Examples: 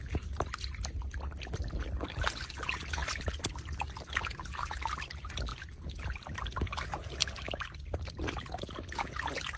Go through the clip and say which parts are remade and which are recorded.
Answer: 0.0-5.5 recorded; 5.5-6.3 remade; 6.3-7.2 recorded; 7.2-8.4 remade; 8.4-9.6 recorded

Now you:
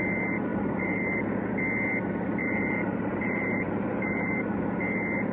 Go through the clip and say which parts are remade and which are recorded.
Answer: 0.0-0.5 recorded; 0.5-1.5 remade; 1.5-2.4 recorded; 2.4-4.3 remade; 4.3-5.3 recorded

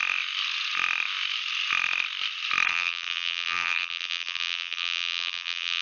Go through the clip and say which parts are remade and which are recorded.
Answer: 0.0-2.7 recorded; 2.7-5.8 remade

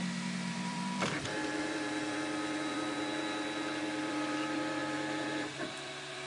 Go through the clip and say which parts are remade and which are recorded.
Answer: 0.0-6.3 remade

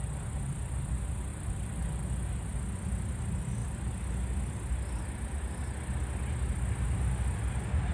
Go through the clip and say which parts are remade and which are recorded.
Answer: 0.0-1.3 recorded; 1.3-2.0 remade; 2.0-7.9 recorded

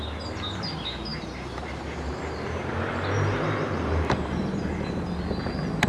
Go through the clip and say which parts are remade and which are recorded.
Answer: 0.0-1.1 recorded; 1.1-4.6 remade; 4.6-5.9 recorded

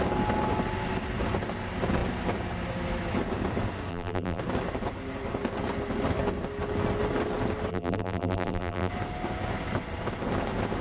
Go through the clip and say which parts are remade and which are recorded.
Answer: 0.0-3.9 recorded; 3.9-4.4 remade; 4.4-7.7 recorded; 7.7-8.9 remade; 8.9-10.8 recorded

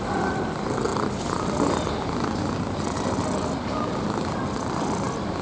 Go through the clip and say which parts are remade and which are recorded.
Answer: 0.0-5.4 recorded